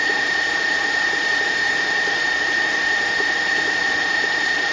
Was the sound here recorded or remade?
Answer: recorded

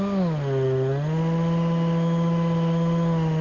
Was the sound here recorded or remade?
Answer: recorded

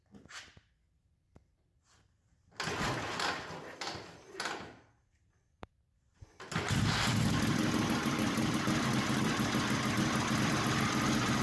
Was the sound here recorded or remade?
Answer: recorded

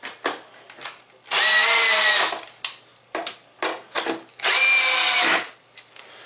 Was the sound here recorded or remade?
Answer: recorded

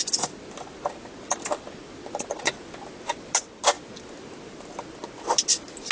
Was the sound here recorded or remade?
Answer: recorded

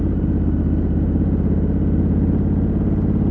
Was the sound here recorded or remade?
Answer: recorded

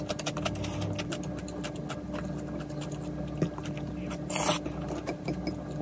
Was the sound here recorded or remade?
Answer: recorded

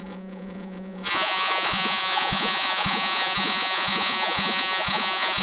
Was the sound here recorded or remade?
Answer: remade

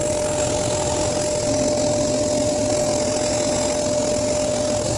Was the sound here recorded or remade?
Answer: recorded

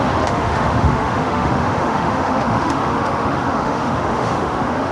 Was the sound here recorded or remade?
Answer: remade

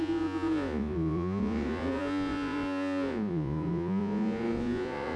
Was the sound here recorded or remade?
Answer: remade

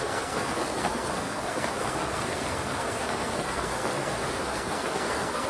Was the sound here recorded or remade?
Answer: remade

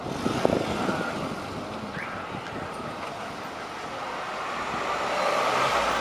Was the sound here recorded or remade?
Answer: recorded